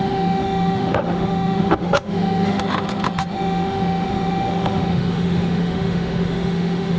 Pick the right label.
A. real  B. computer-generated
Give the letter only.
B